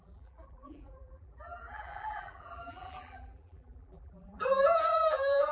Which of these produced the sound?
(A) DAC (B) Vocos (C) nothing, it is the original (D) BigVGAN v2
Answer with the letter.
D